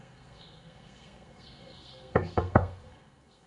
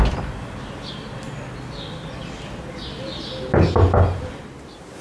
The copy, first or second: first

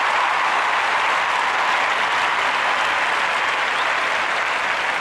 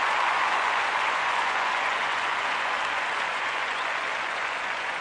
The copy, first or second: second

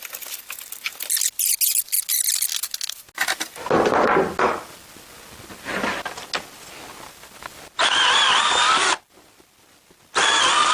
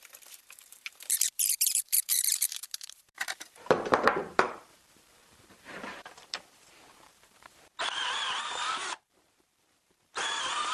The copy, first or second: second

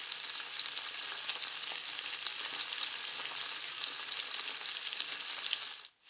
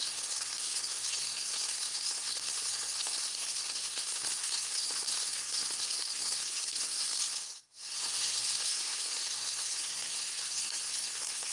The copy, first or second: second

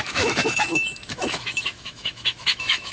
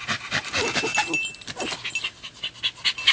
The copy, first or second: first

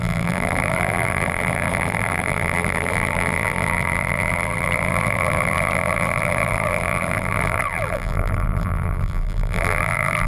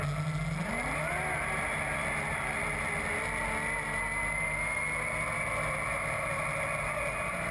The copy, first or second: first